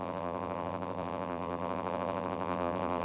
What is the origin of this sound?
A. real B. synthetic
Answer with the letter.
B